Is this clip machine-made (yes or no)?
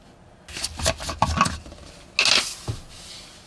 no